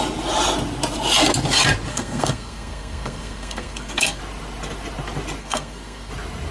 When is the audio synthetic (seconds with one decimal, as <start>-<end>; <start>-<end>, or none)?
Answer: 1.9-4.2; 5.4-6.1